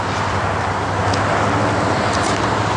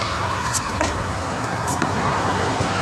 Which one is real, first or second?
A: first